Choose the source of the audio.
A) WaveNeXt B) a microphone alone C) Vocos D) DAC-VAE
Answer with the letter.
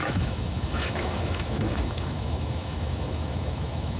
D